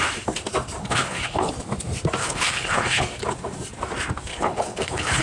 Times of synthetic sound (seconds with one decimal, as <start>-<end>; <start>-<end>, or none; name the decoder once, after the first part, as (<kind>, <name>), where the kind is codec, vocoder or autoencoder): 0.8-1.5 (codec, HILCodec); 2.2-3.1; 4.3-5.2

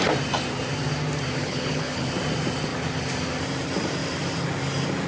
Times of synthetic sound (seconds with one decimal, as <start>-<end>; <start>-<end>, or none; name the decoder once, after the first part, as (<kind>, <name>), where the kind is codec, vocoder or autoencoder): 1.4-2.1 (codec, HILCodec)